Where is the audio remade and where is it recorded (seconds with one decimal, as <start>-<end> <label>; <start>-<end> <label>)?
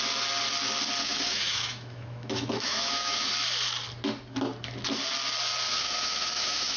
0.0-1.0 recorded; 1.0-3.3 remade; 3.3-5.7 recorded; 5.7-6.8 remade